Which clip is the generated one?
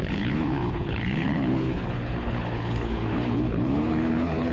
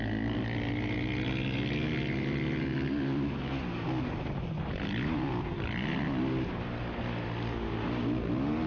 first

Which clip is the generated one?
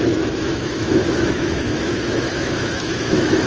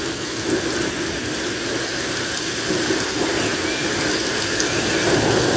first